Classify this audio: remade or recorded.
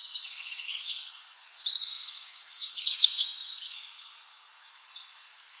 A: remade